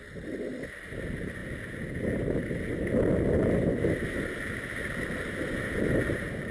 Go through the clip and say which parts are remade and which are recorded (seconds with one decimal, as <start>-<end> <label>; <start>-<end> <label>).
0.0-6.5 recorded